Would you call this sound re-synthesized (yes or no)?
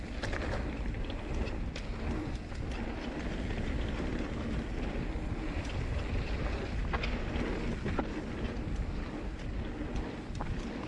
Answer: no